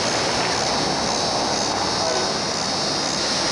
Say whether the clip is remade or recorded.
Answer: remade